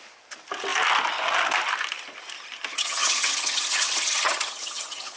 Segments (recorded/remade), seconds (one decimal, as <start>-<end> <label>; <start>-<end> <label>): 0.0-2.7 recorded; 2.7-5.2 remade

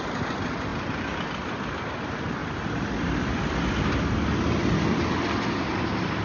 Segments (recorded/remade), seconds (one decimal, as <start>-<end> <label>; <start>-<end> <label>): 0.0-6.2 recorded

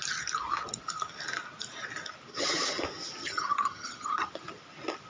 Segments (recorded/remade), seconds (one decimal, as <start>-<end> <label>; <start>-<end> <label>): 0.0-2.3 recorded; 2.3-2.8 remade; 2.8-3.2 recorded; 3.2-4.3 remade; 4.3-5.1 recorded

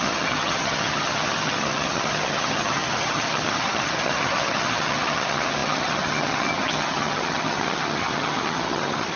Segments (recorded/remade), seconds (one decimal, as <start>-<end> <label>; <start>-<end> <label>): 0.0-9.2 remade